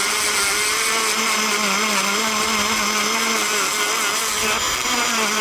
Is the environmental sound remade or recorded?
recorded